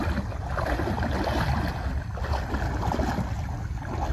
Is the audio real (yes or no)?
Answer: yes